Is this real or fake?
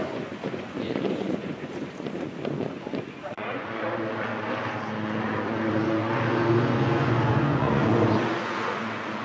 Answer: fake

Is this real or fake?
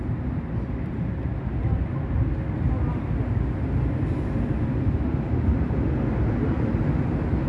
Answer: real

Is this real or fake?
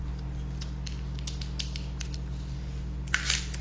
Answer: real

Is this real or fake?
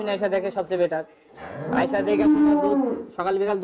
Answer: fake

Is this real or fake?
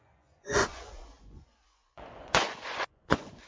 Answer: fake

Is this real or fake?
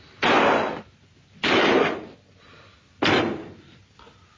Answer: real